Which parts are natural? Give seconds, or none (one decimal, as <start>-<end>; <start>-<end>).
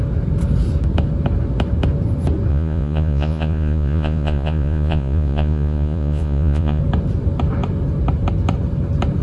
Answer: 0.0-2.5; 6.8-9.2